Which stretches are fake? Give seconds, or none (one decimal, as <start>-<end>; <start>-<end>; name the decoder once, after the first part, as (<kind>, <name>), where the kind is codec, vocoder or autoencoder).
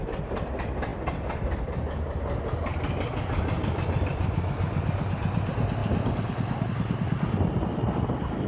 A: none